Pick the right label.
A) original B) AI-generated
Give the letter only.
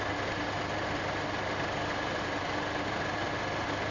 A